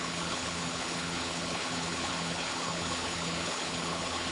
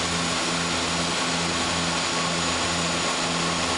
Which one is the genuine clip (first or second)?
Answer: second